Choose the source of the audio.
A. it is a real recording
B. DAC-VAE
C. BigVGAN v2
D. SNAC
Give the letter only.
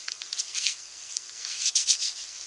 D